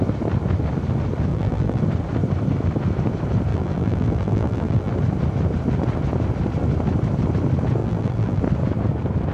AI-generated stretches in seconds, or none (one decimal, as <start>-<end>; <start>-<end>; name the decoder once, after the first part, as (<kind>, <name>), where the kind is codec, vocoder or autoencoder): 1.3-1.8 (vocoder, BigVGAN v2); 3.5-4.9; 7.8-8.4